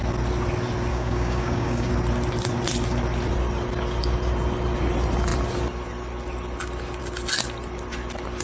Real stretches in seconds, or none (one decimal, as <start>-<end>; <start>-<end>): 0.0-0.9; 1.9-8.4